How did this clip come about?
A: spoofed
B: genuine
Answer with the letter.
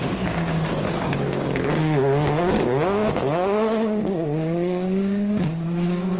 A